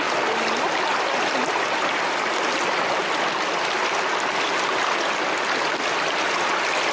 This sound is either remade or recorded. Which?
recorded